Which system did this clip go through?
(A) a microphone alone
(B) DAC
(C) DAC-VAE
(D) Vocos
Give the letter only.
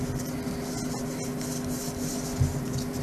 A